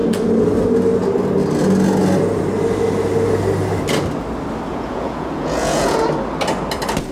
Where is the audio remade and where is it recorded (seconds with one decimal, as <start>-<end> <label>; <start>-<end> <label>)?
0.0-4.7 recorded; 4.7-6.0 remade; 6.0-7.1 recorded